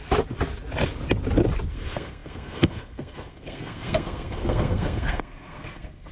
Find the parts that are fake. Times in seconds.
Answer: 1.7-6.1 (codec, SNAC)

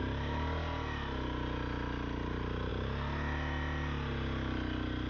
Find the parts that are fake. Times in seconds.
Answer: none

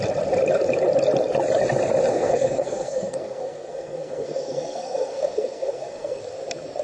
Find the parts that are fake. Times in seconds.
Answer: 2.1-6.2 (codec, SNAC)

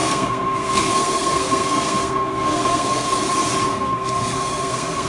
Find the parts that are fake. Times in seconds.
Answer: 0.0-3.1 (codec, SNAC); 3.7-5.1

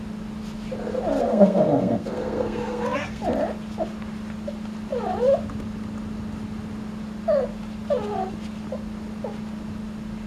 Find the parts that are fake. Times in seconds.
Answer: 1.2-3.2 (codec, SNAC)